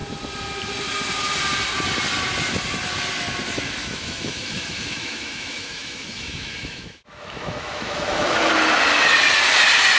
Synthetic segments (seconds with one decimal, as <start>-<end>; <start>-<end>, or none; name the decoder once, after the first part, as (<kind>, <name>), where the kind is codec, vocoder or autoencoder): 3.8-8.5 (autoencoder, DAC-VAE)